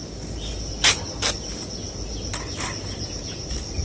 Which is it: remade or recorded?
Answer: recorded